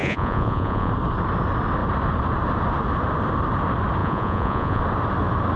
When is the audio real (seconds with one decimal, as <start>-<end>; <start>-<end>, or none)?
0.9-4.0; 4.8-5.6

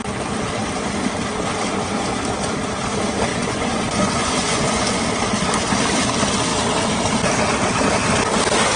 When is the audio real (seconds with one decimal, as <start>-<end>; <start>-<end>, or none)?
0.0-3.3; 5.0-8.8

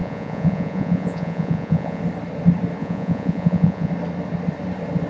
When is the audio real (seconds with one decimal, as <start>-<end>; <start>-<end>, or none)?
2.0-2.8; 3.9-5.1

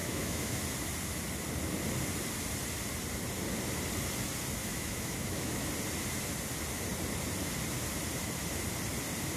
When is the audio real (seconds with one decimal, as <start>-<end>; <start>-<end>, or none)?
0.6-4.6; 5.7-9.4

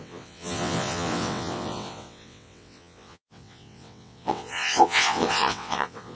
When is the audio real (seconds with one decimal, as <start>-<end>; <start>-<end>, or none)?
none

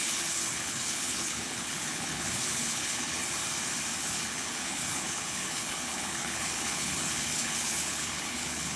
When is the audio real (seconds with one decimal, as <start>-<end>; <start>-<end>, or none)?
3.2-4.0